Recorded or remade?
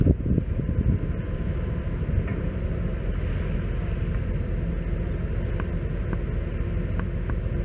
recorded